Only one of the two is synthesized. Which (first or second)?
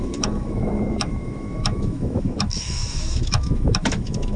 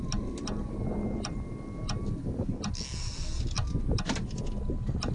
first